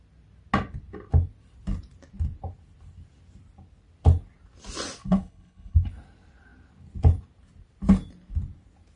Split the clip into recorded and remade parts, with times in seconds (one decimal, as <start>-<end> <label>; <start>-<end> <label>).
0.0-5.0 recorded; 5.0-5.9 remade; 5.9-9.0 recorded